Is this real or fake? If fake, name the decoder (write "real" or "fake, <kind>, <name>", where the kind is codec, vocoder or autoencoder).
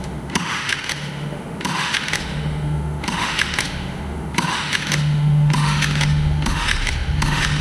fake, autoencoder, DAC-VAE